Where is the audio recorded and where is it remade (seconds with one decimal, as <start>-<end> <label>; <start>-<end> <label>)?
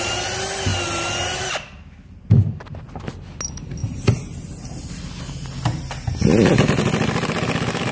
0.0-7.9 recorded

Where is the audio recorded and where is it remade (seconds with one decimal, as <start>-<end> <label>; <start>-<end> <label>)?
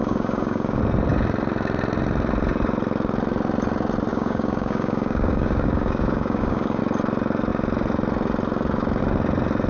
0.0-0.8 remade; 0.8-4.1 recorded; 4.1-6.8 remade; 6.8-9.7 recorded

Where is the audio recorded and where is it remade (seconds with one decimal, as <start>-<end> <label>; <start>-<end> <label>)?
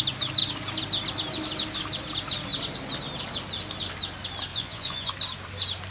0.0-4.5 recorded; 4.5-5.1 remade; 5.1-5.9 recorded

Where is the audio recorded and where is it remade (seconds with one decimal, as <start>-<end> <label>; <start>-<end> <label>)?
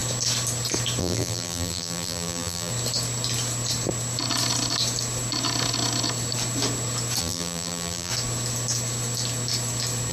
0.0-1.0 recorded; 1.0-2.7 remade; 2.7-7.2 recorded; 7.2-8.1 remade; 8.1-10.1 recorded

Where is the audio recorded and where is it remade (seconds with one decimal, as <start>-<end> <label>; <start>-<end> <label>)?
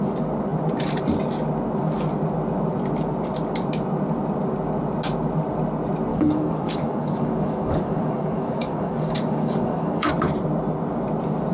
0.0-6.1 recorded; 6.1-10.1 remade; 10.1-11.5 recorded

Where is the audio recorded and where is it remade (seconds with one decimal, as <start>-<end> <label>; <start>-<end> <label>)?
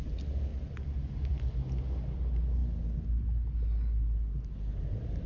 0.0-5.3 recorded